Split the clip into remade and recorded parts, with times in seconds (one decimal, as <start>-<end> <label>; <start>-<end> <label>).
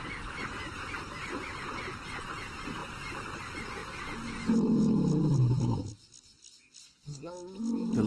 0.0-6.8 recorded; 6.8-7.3 remade; 7.3-8.1 recorded